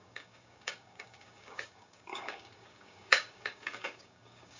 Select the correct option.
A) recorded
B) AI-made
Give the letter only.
B